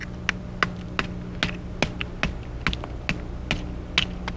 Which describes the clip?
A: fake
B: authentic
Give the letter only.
B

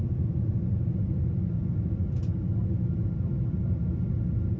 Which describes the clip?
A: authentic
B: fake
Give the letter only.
A